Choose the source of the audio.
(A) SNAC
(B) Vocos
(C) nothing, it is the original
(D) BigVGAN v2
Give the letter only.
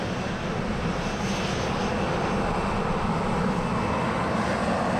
C